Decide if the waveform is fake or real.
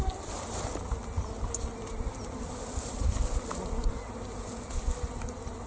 real